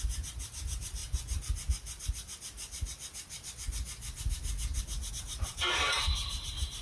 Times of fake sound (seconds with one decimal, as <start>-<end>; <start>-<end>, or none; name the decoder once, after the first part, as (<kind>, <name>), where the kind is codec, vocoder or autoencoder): 0.0-1.0 (vocoder, BigVGAN v2); 5.1-6.8